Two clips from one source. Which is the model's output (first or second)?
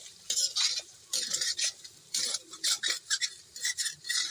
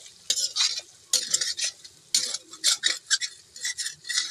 first